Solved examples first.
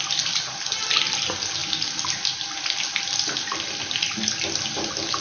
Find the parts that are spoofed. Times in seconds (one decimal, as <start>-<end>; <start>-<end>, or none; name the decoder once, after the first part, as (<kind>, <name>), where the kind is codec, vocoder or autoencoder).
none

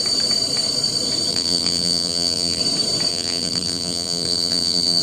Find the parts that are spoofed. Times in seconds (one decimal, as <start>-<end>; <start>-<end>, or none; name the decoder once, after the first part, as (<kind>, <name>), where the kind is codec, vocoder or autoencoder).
1.3-2.6 (vocoder, BigVGAN v2); 3.1-5.0

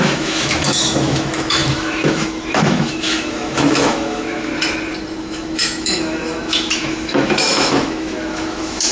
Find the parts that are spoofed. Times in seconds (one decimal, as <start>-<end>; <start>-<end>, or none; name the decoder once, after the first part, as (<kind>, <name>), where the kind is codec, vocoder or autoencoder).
0.0-4.5 (autoencoder, DAC-VAE); 5.2-8.9

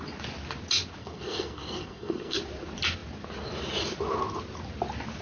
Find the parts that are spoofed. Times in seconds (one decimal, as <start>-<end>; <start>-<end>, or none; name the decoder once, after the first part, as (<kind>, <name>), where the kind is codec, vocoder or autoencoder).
1.0-2.4 (codec, SNAC)

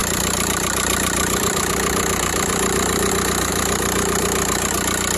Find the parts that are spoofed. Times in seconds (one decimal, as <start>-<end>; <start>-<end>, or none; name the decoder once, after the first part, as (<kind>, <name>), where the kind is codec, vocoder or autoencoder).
0.0-3.1 (vocoder, BigVGAN v2); 3.5-4.7